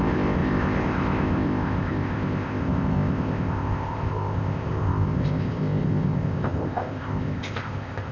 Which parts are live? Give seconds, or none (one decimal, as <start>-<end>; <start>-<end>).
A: none